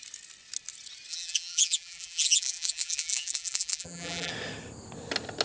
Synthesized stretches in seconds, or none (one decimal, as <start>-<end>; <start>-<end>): 1.1-4.3